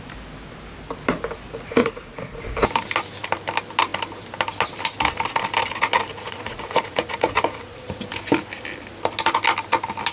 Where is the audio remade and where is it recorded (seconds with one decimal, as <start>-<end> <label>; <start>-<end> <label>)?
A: 0.0-1.8 recorded; 1.8-2.4 remade; 2.4-6.1 recorded; 6.1-8.0 remade; 8.0-10.1 recorded